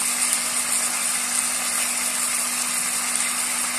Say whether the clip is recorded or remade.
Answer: recorded